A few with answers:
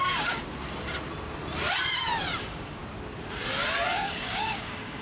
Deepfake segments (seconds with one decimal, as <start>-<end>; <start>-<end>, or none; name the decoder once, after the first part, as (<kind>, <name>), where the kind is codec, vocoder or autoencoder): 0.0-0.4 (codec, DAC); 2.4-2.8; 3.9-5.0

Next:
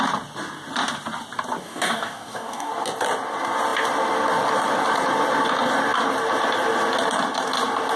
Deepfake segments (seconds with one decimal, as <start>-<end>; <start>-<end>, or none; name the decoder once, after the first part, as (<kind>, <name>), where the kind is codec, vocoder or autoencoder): 1.6-2.7 (codec, DAC)

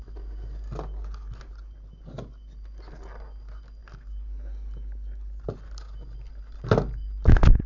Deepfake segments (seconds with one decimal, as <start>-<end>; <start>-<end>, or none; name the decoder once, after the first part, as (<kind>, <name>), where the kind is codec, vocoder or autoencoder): none

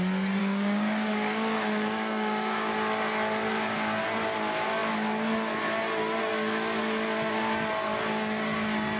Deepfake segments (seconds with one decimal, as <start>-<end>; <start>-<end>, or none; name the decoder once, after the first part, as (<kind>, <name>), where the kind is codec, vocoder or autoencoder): 0.4-2.7 (codec, DAC)

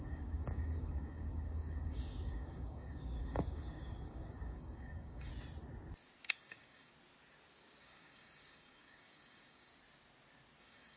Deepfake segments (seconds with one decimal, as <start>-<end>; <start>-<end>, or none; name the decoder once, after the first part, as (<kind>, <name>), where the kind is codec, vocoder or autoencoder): 0.0-5.3 (codec, DAC); 6.3-6.9; 7.8-9.7; 10.6-11.0